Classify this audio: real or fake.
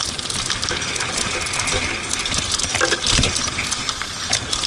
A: real